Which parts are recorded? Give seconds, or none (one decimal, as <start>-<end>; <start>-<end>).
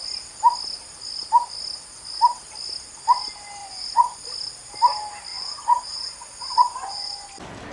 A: 0.0-3.6; 4.2-5.3; 7.3-7.7